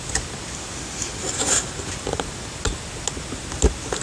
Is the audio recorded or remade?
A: recorded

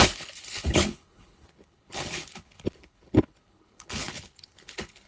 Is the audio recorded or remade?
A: remade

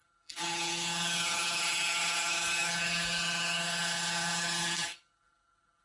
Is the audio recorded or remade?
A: remade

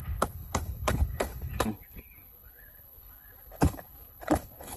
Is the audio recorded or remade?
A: remade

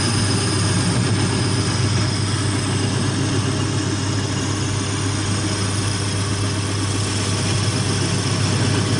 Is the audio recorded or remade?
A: recorded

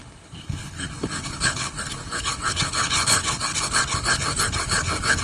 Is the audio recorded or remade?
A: remade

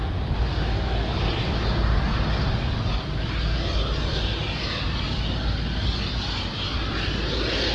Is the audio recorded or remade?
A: recorded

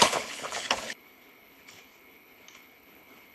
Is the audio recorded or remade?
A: remade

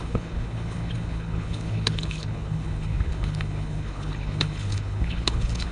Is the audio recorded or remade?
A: remade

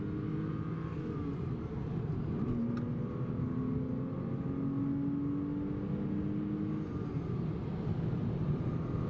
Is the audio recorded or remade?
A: recorded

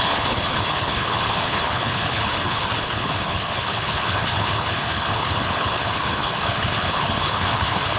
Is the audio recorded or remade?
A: remade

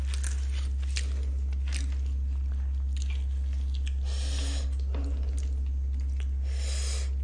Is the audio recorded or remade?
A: recorded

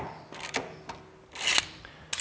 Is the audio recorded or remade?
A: recorded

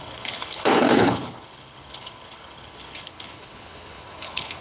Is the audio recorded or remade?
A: remade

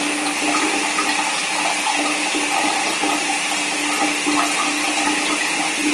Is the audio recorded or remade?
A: recorded